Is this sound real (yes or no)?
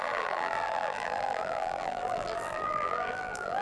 no